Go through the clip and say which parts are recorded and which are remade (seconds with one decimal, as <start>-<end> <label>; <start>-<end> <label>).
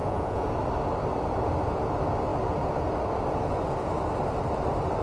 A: 0.0-0.5 remade; 0.5-5.0 recorded